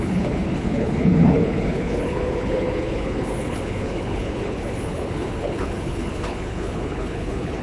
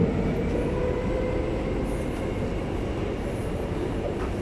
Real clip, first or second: second